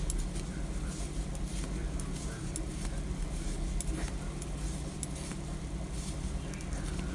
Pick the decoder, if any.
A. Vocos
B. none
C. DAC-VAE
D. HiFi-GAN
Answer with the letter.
B